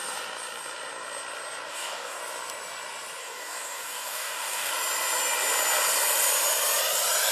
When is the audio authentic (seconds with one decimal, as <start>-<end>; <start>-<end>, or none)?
0.0-1.7; 2.2-3.2; 4.7-7.3